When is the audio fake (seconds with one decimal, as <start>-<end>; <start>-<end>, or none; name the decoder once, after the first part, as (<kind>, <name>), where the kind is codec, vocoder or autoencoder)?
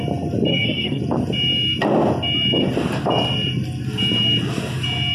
0.5-1.0 (codec, SNAC)